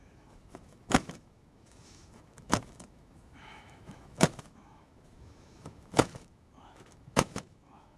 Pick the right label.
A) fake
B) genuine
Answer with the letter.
A